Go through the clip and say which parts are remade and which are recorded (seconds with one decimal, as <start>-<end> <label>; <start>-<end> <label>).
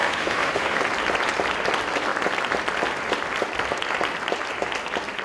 0.0-0.8 remade; 0.8-5.2 recorded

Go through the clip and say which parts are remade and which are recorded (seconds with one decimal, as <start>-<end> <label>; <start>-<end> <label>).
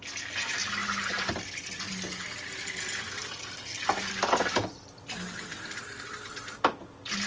0.0-7.3 recorded